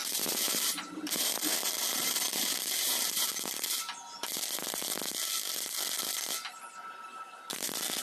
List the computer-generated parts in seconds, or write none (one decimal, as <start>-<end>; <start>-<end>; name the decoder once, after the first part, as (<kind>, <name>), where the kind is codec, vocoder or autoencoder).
0.0-3.4 (vocoder, BigVGAN v2)